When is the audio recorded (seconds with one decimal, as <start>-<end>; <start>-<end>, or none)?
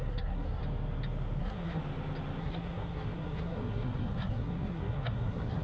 0.6-1.4; 1.8-2.4